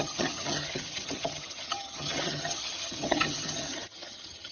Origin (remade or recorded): remade